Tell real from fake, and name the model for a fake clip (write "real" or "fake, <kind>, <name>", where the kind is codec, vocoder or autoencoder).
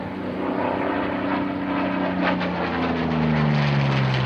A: real